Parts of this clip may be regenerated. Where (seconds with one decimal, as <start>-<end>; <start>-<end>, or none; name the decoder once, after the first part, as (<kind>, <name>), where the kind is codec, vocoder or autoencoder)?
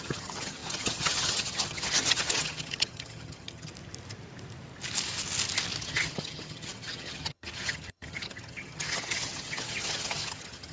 0.0-3.7 (vocoder, HiFi-GAN); 5.8-10.7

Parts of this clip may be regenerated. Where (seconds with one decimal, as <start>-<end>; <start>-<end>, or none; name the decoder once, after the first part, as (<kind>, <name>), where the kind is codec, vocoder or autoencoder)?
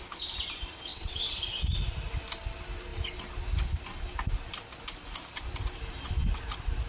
0.9-1.5 (vocoder, WaveNeXt)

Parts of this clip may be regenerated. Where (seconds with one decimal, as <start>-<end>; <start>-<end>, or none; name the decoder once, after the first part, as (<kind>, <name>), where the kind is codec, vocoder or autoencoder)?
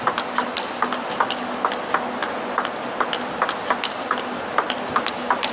none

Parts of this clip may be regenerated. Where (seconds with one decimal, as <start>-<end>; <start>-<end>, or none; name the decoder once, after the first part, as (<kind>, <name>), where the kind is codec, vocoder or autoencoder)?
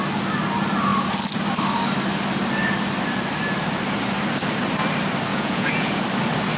5.3-6.0 (vocoder, Vocos)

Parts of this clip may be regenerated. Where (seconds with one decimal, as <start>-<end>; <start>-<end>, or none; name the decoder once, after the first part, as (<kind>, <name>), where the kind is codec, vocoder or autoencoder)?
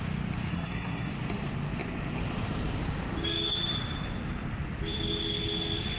0.5-1.1 (codec, SNAC)